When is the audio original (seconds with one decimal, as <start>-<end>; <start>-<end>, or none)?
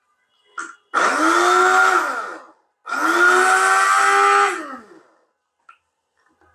0.0-6.5